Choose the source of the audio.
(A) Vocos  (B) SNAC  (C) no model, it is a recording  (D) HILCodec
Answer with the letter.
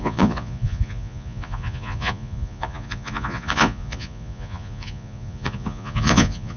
A